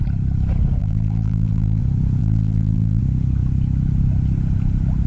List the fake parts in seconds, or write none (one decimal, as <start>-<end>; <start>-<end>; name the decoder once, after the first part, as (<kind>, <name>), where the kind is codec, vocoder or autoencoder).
0.8-1.8 (vocoder, BigVGAN v2); 2.2-3.0